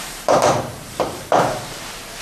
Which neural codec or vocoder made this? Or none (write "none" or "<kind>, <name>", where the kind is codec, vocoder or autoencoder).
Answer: vocoder, BigVGAN v2